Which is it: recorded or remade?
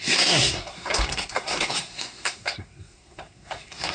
remade